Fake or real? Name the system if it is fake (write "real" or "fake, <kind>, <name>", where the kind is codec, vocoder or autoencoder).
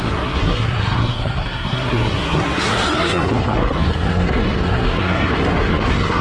fake, codec, SNAC